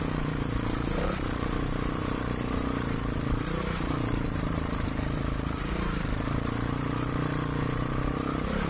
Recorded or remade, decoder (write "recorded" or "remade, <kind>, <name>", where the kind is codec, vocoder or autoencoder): remade, vocoder, BigVGAN v2